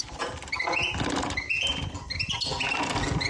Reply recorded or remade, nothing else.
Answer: recorded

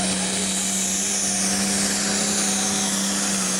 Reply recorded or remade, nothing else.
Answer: recorded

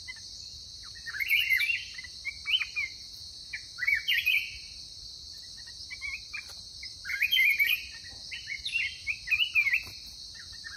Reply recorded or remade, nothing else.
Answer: recorded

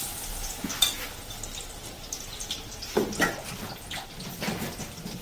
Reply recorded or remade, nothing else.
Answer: recorded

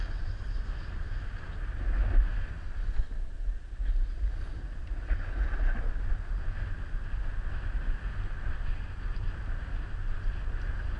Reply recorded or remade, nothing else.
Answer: recorded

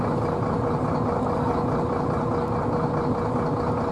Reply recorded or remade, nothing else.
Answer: recorded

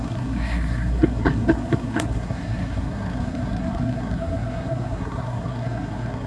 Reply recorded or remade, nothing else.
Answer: remade